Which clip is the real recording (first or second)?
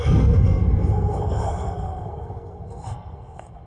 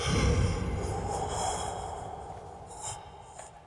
second